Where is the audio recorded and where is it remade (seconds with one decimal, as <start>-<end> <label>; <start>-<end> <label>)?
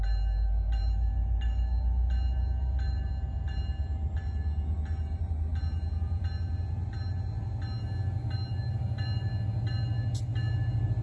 0.0-11.0 recorded